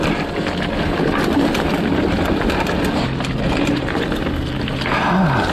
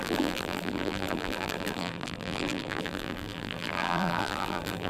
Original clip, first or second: first